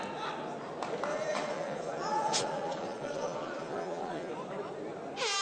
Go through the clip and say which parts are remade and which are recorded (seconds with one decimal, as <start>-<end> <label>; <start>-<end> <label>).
0.0-1.1 recorded; 1.1-4.3 remade; 4.3-5.4 recorded